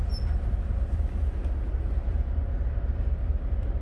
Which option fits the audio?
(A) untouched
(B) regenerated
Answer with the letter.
A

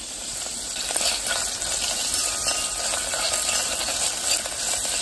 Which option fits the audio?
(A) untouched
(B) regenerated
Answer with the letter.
A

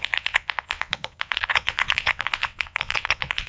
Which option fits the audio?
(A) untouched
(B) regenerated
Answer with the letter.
B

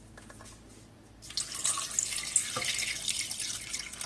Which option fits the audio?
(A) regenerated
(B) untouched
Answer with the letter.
B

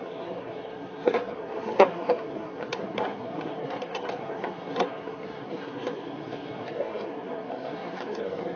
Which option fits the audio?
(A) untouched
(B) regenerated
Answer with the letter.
B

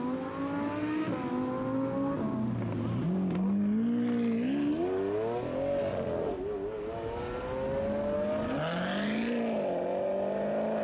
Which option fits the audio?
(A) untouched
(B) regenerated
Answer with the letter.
A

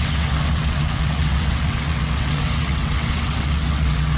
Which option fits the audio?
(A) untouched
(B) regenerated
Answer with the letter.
B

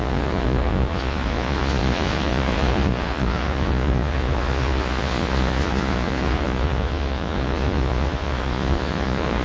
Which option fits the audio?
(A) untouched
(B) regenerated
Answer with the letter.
B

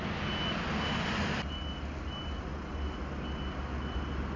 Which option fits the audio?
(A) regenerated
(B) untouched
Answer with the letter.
B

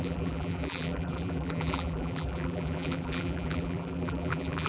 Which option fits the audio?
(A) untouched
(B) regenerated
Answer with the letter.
B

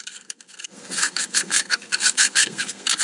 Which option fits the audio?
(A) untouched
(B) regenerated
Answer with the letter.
B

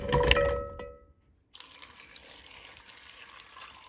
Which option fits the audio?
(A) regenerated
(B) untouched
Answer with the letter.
B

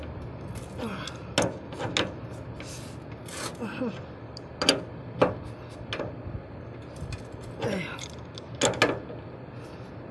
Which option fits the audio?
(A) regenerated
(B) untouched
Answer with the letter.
B